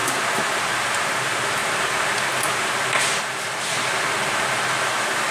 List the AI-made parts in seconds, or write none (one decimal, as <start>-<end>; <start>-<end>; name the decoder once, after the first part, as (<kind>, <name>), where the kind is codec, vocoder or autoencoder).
none